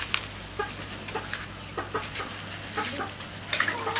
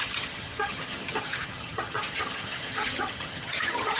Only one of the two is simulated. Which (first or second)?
second